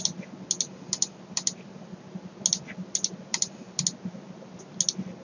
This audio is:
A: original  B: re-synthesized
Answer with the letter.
A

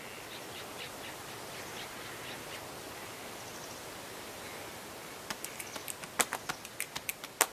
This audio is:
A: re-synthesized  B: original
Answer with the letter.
B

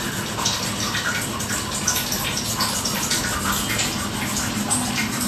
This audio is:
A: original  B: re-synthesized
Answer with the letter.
A